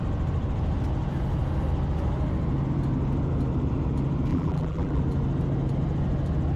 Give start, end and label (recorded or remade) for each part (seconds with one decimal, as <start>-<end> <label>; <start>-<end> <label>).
0.0-4.3 recorded; 4.3-5.0 remade; 5.0-6.6 recorded